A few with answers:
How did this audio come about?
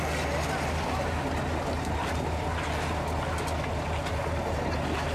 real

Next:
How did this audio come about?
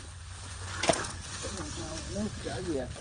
fake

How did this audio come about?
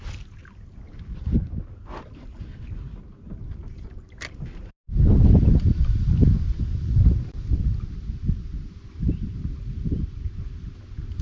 real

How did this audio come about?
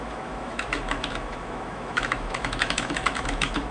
fake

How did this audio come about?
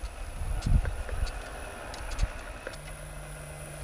real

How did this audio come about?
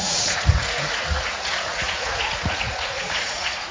fake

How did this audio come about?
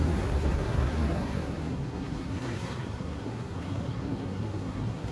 fake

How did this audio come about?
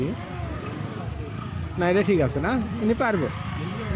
real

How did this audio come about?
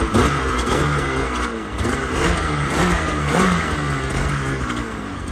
fake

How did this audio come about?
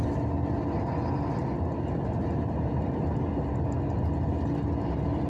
real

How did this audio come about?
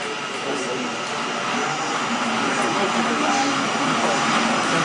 real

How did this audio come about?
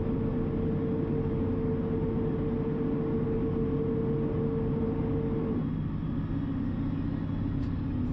real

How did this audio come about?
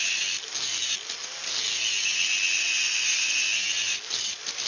real